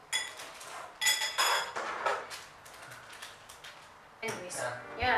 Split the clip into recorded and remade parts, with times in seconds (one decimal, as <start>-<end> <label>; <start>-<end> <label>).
0.0-5.2 recorded